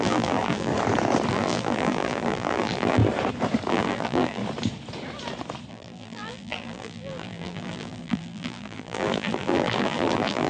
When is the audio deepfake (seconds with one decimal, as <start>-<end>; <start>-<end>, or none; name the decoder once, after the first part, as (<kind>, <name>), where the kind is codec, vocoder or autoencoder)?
0.0-0.7 (vocoder, BigVGAN v2); 1.3-3.0; 3.7-4.4; 5.7-10.5